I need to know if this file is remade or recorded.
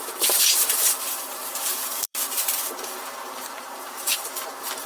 remade